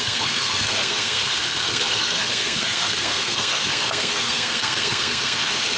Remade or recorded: remade